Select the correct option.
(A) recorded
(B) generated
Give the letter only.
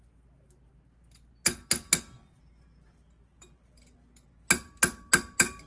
A